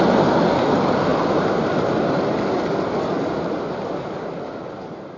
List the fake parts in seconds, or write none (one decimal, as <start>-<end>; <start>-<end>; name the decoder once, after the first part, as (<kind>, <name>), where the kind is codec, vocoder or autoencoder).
none